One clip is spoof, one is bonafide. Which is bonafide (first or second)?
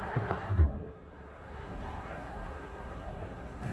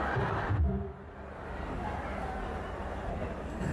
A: second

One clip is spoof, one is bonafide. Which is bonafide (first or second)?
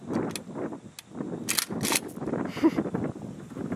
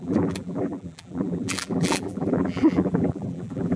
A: first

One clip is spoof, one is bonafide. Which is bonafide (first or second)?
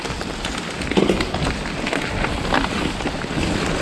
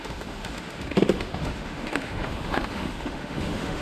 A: first